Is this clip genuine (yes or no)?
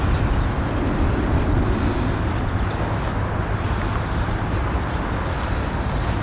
yes